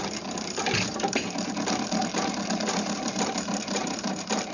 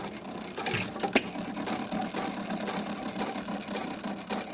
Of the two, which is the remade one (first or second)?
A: first